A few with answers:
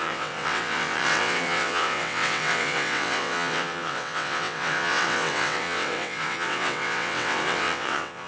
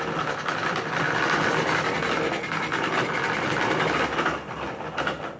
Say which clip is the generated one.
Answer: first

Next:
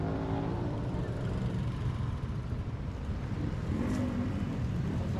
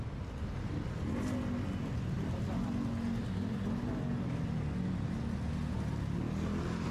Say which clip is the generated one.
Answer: first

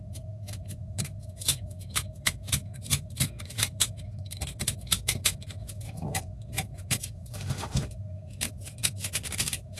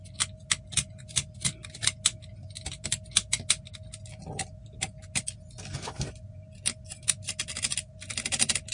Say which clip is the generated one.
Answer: first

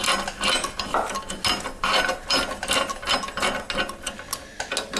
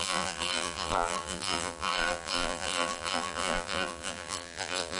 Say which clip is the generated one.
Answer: second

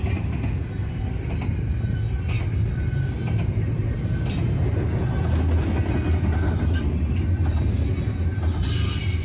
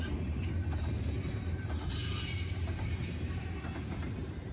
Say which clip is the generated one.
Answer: second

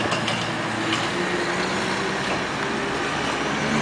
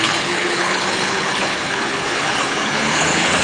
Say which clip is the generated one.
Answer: second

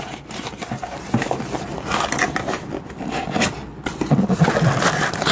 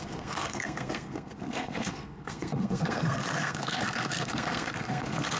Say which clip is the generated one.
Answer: second